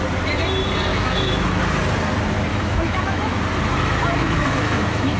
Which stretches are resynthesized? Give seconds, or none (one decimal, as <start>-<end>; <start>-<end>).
0.9-1.6; 2.5-3.4; 4.2-5.2